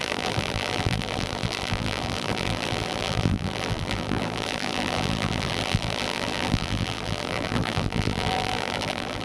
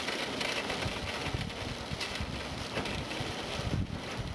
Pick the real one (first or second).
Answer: second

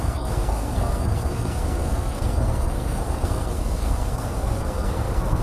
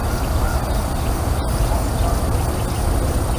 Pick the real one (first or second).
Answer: second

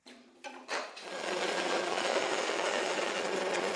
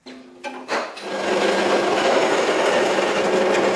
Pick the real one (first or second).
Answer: second